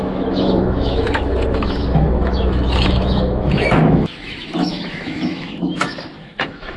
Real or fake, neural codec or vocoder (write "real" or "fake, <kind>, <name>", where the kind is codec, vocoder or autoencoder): fake, autoencoder, DAC-VAE